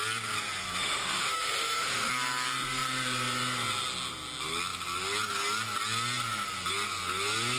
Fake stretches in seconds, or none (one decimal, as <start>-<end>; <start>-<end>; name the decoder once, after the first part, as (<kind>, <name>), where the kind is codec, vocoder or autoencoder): 0.8-2.1 (autoencoder, DAC-VAE)